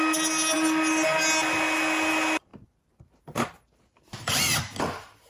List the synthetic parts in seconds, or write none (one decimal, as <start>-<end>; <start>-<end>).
none